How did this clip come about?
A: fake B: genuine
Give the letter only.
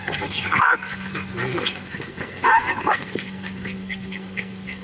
A